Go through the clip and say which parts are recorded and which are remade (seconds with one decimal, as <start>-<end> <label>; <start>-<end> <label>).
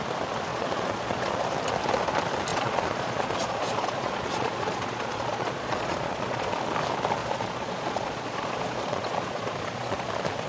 0.0-0.5 recorded; 0.5-1.4 remade; 1.4-2.5 recorded; 2.5-6.6 remade; 6.6-7.2 recorded; 7.2-10.1 remade; 10.1-10.5 recorded